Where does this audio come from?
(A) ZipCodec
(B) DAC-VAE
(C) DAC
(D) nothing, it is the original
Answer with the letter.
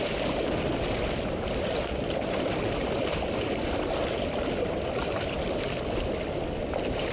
D